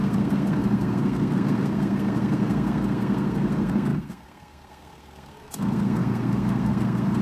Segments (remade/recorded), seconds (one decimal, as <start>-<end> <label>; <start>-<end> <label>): 0.0-7.2 remade

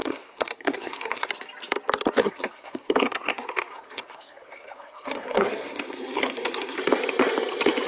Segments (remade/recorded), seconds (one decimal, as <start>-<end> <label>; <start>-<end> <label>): 0.0-1.3 remade; 1.3-2.2 recorded; 2.2-6.8 remade; 6.8-7.9 recorded

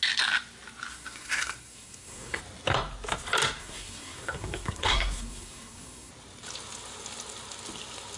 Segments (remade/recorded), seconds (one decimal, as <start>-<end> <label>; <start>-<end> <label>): 0.0-0.9 recorded; 0.9-2.4 remade; 2.4-3.6 recorded; 3.6-6.1 remade; 6.1-8.2 recorded